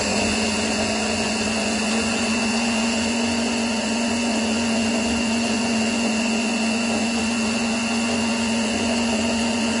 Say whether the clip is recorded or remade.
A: remade